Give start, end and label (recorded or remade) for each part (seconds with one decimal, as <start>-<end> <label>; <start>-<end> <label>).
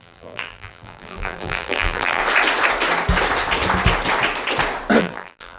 0.0-2.2 remade; 2.2-5.0 recorded; 5.0-5.6 remade